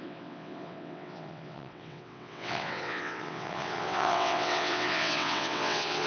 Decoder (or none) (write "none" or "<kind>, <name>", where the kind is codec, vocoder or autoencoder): vocoder, WaveNeXt